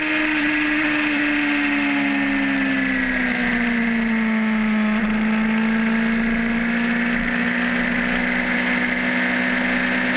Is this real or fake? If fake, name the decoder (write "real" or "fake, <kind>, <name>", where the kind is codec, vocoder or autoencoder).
real